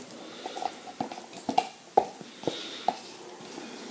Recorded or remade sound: recorded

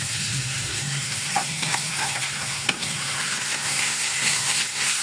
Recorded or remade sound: remade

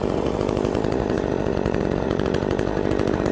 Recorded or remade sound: remade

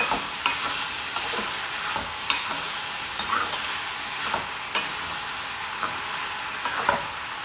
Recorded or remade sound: recorded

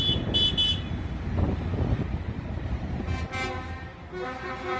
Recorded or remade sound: recorded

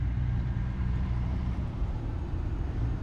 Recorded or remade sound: remade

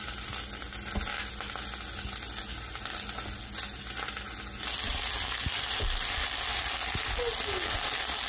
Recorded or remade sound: recorded